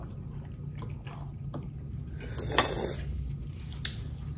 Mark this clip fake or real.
real